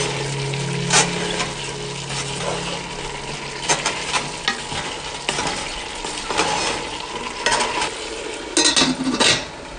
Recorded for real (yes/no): yes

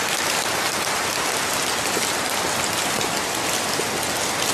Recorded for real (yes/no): yes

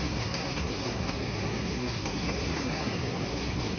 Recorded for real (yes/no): no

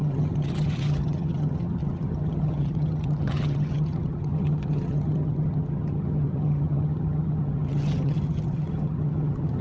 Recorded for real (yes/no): no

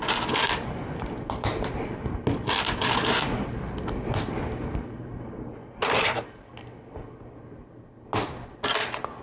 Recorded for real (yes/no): yes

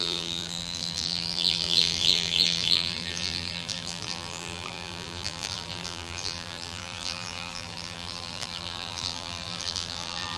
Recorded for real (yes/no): no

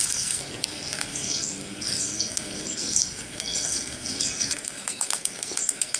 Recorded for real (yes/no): no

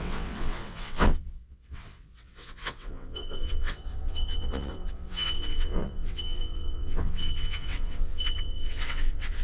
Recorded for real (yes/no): no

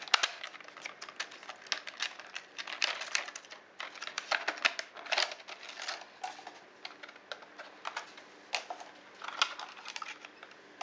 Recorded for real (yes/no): yes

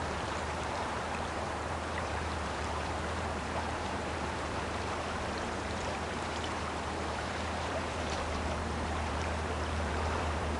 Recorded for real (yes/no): no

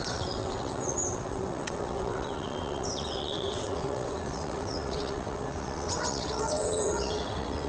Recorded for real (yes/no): no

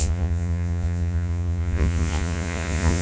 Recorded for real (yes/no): no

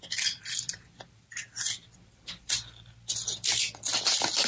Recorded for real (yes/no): yes